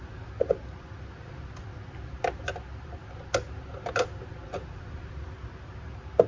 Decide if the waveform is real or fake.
real